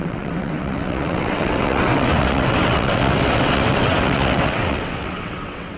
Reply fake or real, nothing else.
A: fake